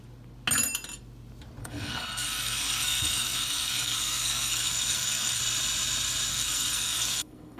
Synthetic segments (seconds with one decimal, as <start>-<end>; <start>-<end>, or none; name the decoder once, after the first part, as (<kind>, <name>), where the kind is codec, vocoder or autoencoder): 1.6-5.4 (codec, SNAC); 6.3-7.6